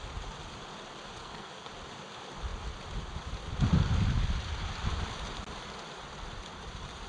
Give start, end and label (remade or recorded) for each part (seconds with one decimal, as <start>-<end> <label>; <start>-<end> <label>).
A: 0.0-1.2 recorded; 1.2-1.7 remade; 1.7-7.1 recorded